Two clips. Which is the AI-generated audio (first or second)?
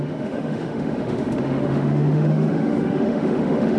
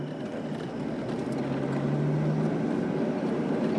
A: first